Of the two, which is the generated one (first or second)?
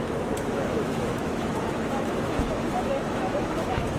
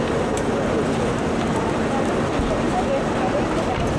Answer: first